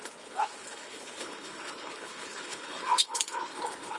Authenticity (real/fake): fake